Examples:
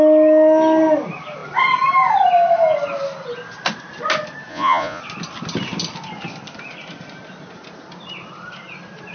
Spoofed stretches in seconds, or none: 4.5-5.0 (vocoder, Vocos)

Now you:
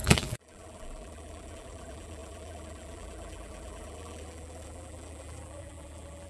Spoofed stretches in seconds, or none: 0.0-6.3 (vocoder, BigVGAN v2)